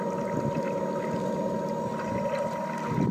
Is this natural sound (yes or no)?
yes